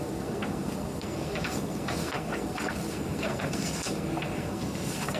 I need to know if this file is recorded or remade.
remade